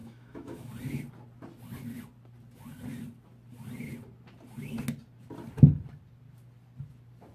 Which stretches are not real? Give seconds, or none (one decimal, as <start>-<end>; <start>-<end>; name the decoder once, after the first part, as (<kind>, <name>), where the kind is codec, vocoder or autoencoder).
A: 0.0-0.7 (autoencoder, DAC-VAE)